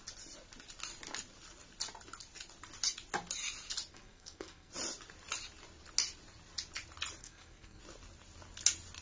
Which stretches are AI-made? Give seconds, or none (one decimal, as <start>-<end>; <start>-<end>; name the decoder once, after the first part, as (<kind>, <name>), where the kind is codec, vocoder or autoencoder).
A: 3.9-4.7 (codec, SNAC); 7.2-7.8